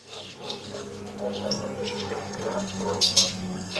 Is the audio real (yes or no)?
no